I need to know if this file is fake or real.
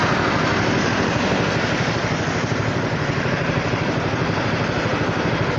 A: real